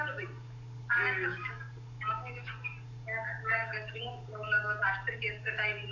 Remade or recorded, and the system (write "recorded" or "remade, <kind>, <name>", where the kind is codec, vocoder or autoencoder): remade, codec, DAC